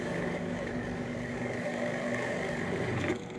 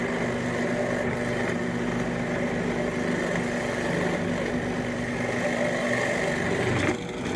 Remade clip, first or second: first